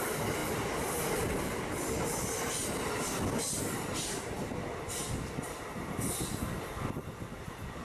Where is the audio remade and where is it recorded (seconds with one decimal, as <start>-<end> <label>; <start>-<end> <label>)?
0.0-7.8 recorded